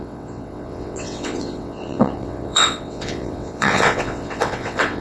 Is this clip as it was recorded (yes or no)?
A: no